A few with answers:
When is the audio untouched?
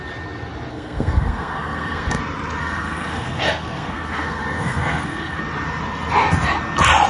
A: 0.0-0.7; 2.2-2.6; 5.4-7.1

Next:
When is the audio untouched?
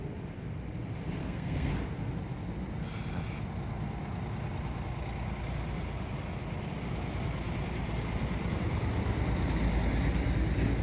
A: 0.0-1.2; 1.7-10.8